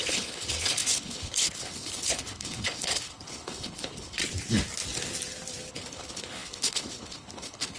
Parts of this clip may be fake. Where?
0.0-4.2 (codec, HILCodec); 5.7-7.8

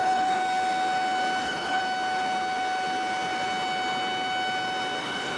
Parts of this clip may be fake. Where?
0.0-0.4 (codec, HILCodec); 1.4-1.8; 5.0-5.4

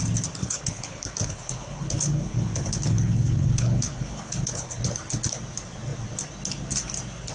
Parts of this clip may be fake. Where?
0.4-4.8 (codec, HILCodec)

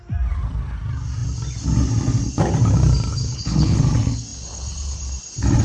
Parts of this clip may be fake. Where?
3.1-3.8 (codec, HILCodec)

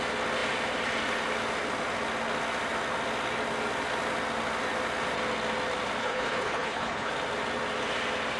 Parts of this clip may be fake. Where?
6.0-7.1 (codec, HILCodec)